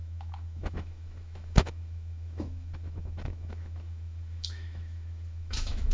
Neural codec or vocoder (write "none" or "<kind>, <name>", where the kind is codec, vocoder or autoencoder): autoencoder, DAC-VAE